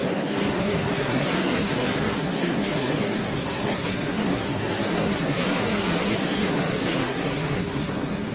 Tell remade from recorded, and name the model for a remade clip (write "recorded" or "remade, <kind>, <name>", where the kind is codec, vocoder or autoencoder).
remade, codec, SNAC